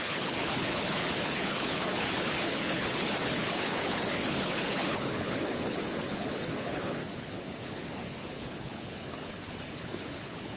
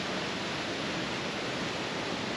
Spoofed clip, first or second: first